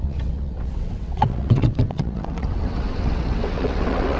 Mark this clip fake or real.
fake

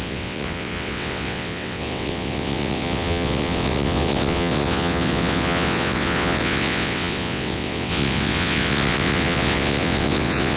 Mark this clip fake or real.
fake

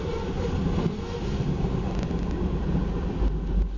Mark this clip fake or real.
real